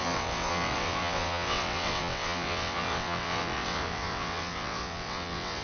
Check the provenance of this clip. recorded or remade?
remade